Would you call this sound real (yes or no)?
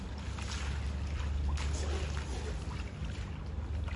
yes